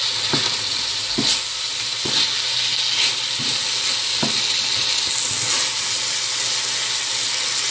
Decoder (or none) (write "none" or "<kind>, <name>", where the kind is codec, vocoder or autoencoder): none